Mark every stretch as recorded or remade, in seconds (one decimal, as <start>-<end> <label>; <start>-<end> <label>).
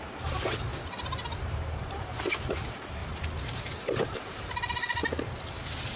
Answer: 0.0-0.7 remade; 0.7-1.4 recorded; 1.4-3.0 remade; 3.0-3.5 recorded; 3.5-5.0 remade; 5.0-6.0 recorded